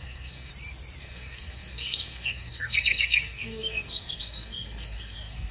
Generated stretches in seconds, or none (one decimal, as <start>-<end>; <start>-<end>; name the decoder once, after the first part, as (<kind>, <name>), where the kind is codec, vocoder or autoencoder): 0.0-0.5 (codec, SNAC); 1.0-5.5